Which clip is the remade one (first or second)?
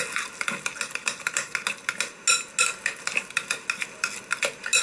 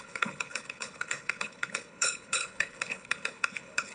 second